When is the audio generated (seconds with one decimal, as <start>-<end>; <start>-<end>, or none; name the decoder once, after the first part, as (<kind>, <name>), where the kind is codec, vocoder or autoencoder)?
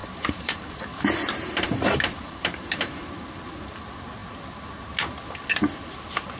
0.0-3.1 (vocoder, BigVGAN v2)